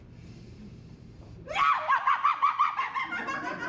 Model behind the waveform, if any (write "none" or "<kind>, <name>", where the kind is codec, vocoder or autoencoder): none